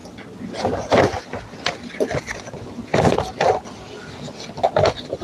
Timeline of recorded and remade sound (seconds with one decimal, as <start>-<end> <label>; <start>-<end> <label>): 0.0-5.2 recorded